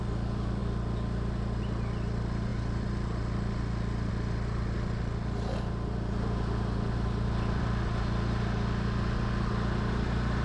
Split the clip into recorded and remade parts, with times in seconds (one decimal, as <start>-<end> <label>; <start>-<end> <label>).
0.0-10.4 recorded